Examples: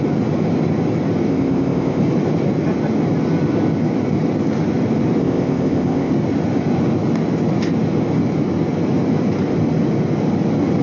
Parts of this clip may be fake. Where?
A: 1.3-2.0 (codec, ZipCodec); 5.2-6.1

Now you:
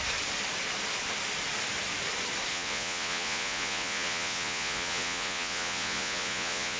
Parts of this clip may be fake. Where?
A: 2.5-6.8 (vocoder, Vocos)